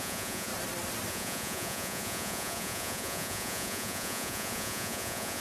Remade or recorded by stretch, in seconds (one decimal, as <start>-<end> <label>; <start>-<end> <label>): 0.0-0.5 remade; 0.5-1.1 recorded; 1.1-5.4 remade